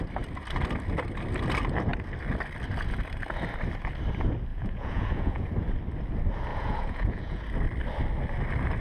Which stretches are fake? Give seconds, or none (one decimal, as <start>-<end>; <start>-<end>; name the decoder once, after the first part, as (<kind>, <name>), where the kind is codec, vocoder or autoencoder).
4.5-5.5 (vocoder, Vocos); 6.5-7.4